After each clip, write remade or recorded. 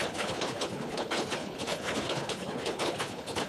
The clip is remade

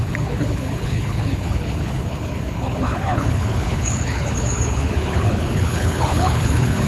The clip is remade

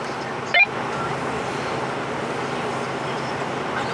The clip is recorded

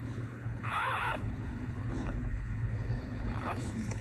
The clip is remade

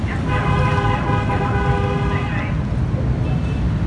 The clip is recorded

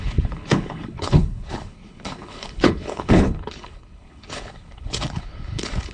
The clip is remade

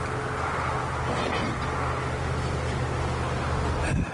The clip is recorded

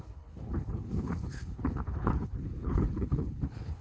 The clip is remade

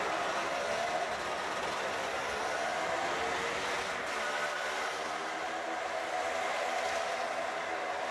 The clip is recorded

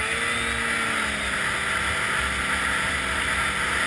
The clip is recorded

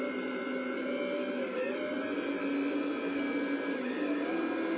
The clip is recorded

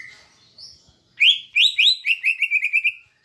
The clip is recorded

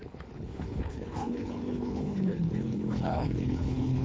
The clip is remade